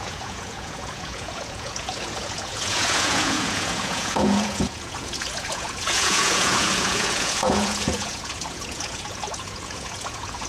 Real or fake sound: fake